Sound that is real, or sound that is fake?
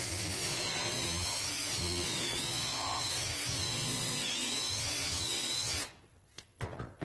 fake